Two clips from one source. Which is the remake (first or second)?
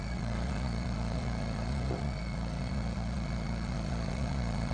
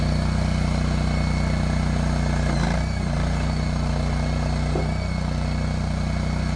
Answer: first